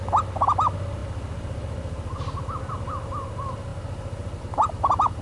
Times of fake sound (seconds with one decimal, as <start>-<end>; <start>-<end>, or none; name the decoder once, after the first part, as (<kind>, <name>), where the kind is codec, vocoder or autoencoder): 1.0-2.7 (vocoder, BigVGAN v2)